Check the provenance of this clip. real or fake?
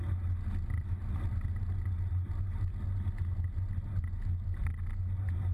real